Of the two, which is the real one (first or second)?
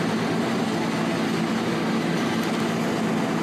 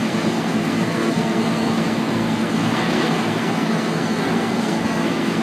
first